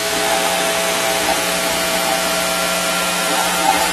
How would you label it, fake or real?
fake